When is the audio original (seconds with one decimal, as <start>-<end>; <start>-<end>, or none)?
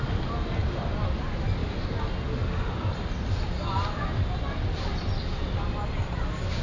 0.0-6.6